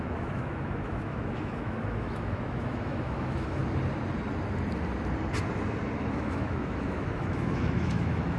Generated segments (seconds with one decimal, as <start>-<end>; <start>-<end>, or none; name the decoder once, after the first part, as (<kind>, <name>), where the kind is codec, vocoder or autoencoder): 0.0-3.6 (autoencoder, DAC-VAE); 6.0-8.4